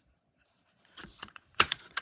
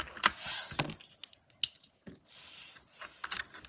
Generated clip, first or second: first